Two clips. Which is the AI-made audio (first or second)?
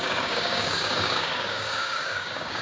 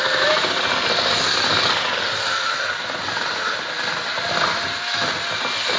first